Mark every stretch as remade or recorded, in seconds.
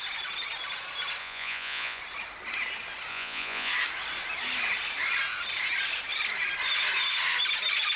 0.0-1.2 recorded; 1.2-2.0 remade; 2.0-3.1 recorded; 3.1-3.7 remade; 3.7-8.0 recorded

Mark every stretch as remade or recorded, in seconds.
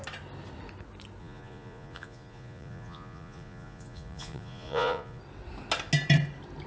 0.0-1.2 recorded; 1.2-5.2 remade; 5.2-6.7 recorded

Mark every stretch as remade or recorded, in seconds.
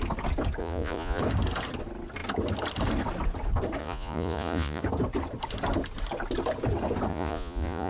0.0-0.6 recorded; 0.6-1.2 remade; 1.2-3.8 recorded; 3.8-4.8 remade; 4.8-7.1 recorded; 7.1-7.9 remade